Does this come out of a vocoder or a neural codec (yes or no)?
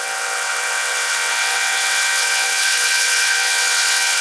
yes